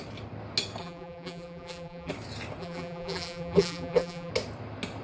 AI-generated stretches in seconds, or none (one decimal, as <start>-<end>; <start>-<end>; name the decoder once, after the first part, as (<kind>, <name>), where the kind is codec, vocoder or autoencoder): 0.8-2.1 (vocoder, BigVGAN v2); 2.6-4.3